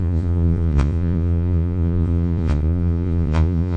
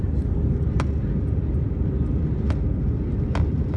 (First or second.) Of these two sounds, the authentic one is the second